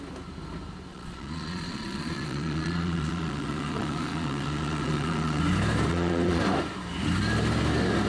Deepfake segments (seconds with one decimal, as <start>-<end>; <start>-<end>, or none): 0.9-5.4; 5.9-6.4